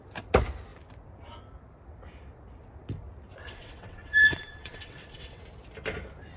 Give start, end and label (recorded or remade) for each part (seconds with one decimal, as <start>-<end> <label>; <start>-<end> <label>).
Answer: 0.0-3.4 recorded; 3.4-5.4 remade; 5.4-6.4 recorded